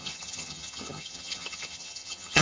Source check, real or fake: fake